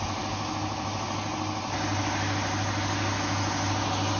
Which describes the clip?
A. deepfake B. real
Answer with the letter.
B